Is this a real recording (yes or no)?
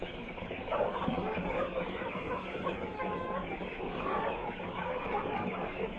no